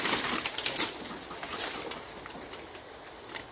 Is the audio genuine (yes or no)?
yes